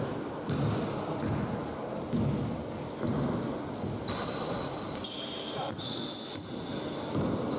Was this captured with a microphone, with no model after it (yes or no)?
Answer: yes